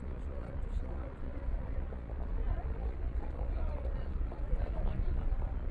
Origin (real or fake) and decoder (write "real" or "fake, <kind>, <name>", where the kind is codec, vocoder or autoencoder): fake, vocoder, Vocos